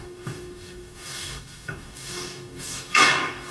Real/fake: fake